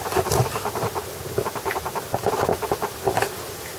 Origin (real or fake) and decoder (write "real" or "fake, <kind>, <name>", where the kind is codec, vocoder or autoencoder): real